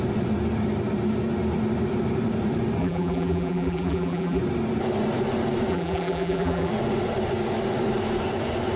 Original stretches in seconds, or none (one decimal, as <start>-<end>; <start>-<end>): 0.0-2.8; 4.4-5.7; 6.7-8.8